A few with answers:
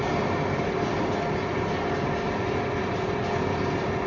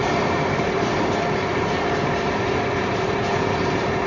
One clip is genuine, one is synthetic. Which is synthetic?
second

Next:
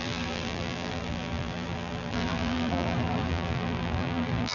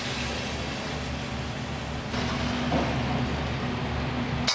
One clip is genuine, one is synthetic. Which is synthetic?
first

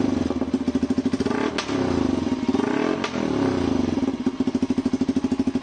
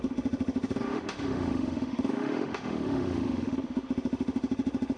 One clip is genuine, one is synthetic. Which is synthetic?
second